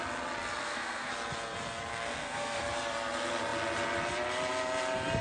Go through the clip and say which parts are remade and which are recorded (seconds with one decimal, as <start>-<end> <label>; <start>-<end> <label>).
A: 0.0-0.6 recorded; 0.6-1.1 remade; 1.1-1.9 recorded; 1.9-2.6 remade; 2.6-5.2 recorded